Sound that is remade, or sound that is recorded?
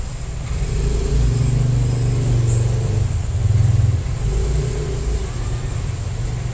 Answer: recorded